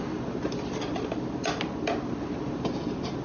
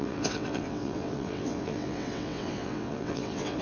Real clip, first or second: first